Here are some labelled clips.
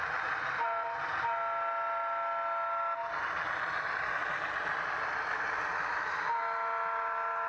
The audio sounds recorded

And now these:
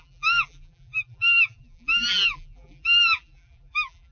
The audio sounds remade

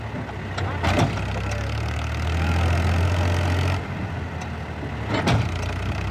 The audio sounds recorded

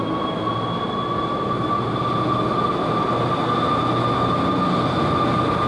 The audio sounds recorded